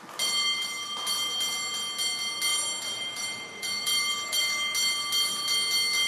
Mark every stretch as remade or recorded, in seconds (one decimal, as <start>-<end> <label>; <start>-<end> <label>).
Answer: 0.0-2.5 recorded; 2.5-4.4 remade; 4.4-6.1 recorded